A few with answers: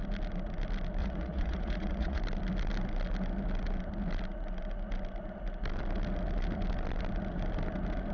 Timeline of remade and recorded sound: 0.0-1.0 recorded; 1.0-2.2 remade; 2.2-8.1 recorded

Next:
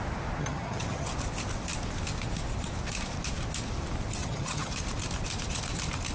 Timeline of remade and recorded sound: 0.0-0.4 recorded; 0.4-1.1 remade; 1.1-4.2 recorded; 4.2-4.7 remade; 4.7-6.1 recorded

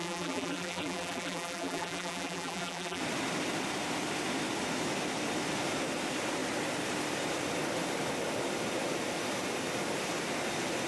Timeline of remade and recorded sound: 0.0-3.0 remade; 3.0-10.9 recorded

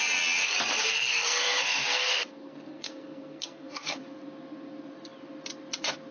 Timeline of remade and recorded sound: 0.0-0.8 recorded; 0.8-4.0 remade; 4.0-6.1 recorded